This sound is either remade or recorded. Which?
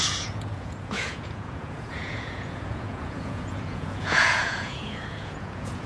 remade